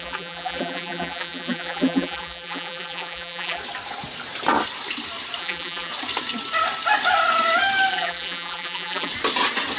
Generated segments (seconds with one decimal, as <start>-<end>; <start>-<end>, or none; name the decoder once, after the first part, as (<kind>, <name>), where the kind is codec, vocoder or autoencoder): 0.0-3.6 (vocoder, BigVGAN v2); 5.4-5.9; 7.9-9.1